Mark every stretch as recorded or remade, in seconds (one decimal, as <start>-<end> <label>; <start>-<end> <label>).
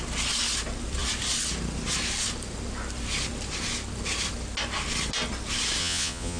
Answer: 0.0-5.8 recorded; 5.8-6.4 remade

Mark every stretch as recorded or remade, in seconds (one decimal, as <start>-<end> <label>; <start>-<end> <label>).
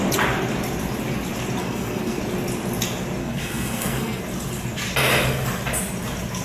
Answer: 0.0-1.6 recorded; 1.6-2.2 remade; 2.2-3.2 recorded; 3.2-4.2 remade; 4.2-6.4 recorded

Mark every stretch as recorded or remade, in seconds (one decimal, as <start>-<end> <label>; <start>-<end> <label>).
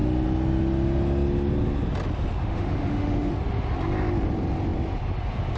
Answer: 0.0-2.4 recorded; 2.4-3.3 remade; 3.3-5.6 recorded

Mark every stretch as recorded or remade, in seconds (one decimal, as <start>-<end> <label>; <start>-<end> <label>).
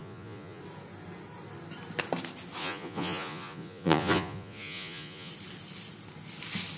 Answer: 0.0-0.6 remade; 0.6-2.6 recorded; 2.6-5.3 remade; 5.3-6.8 recorded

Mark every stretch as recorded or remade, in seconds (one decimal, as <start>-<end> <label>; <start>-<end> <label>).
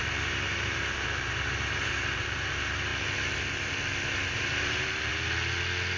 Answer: 0.0-2.9 remade; 2.9-4.3 recorded; 4.3-5.1 remade; 5.1-6.0 recorded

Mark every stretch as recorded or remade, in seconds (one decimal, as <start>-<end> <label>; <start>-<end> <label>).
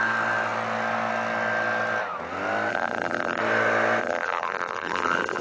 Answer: 0.0-2.7 recorded; 2.7-3.4 remade; 3.4-4.0 recorded; 4.0-5.4 remade